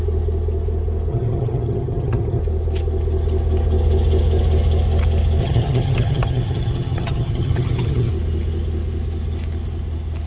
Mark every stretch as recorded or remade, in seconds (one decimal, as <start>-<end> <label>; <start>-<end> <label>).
0.0-1.1 recorded; 1.1-2.4 remade; 2.4-5.4 recorded; 5.4-8.1 remade; 8.1-10.3 recorded